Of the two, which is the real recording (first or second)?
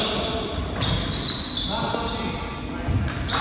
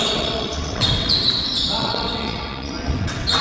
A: first